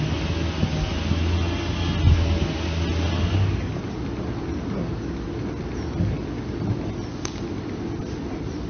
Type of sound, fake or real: real